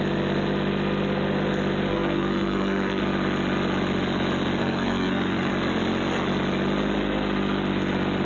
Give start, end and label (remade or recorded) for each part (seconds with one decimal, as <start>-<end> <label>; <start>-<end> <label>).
0.0-1.9 recorded; 1.9-3.0 remade; 3.0-4.6 recorded; 4.6-5.5 remade; 5.5-8.2 recorded